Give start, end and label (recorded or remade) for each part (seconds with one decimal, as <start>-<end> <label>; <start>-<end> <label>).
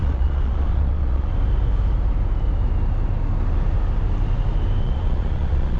0.0-1.3 remade; 1.3-4.8 recorded; 4.8-5.8 remade